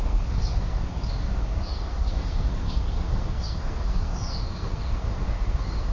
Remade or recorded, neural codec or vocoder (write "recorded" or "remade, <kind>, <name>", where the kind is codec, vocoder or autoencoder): remade, codec, SNAC